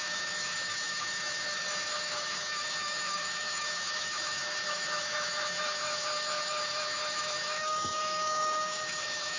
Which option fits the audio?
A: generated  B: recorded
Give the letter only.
A